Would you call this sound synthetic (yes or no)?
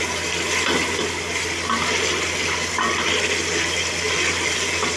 no